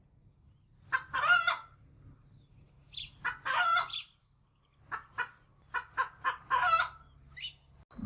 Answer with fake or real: real